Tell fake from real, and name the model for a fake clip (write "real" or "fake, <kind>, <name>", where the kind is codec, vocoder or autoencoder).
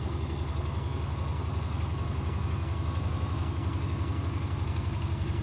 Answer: fake, codec, SNAC